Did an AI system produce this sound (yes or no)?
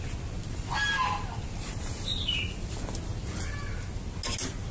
no